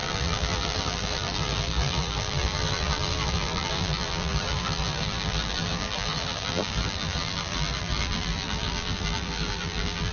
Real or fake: fake